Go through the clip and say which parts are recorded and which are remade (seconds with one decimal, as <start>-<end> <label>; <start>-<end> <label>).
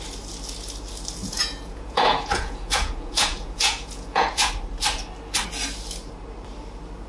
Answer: 0.0-1.2 recorded; 1.2-4.5 remade; 4.5-7.1 recorded